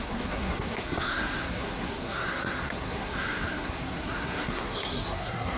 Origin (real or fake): fake